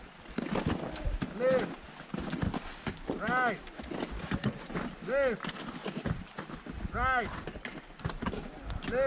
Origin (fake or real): real